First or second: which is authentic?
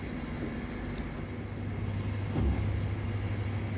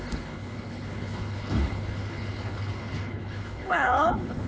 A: first